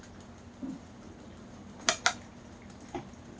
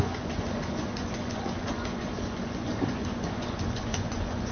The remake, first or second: second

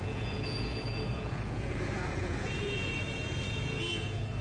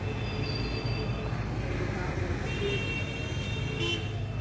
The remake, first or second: first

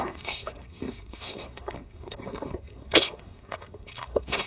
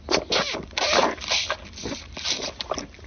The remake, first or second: first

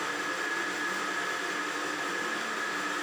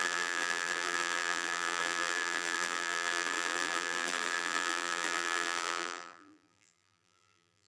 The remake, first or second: second